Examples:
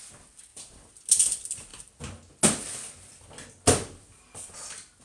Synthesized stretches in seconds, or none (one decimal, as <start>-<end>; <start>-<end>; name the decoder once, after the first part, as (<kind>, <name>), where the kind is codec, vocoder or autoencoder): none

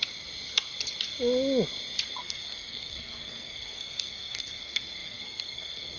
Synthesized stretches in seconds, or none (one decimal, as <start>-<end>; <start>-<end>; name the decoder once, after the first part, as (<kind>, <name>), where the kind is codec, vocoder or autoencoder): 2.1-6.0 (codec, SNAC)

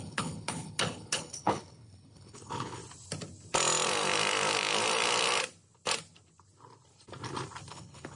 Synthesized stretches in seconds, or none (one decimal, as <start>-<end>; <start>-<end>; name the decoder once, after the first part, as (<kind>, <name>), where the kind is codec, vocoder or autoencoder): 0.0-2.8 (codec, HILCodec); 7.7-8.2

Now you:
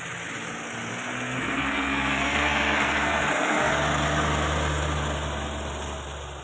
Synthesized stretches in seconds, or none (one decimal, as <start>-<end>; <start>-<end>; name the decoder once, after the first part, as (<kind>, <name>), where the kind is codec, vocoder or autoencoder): 0.9-3.7 (codec, SNAC)

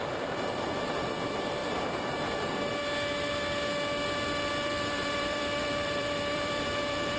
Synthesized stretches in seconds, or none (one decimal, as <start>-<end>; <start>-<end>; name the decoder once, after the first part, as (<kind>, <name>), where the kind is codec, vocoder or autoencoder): 0.0-1.6 (vocoder, BigVGAN v2); 4.5-7.2

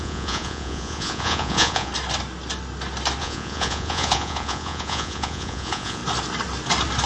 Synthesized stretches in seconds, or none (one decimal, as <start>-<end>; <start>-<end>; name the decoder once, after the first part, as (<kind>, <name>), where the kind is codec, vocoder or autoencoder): 0.0-1.9 (vocoder, Vocos); 3.2-6.0

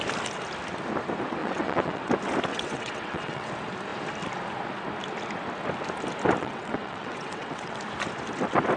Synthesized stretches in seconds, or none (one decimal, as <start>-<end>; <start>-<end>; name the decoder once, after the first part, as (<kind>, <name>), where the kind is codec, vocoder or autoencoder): 1.4-2.1 (vocoder, WaveNeXt); 2.5-3.5; 6.4-7.8

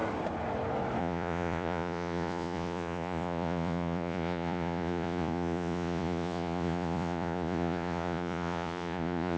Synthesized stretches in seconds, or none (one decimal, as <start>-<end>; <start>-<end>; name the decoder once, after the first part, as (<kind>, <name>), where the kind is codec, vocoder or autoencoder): 1.0-9.4 (vocoder, Vocos)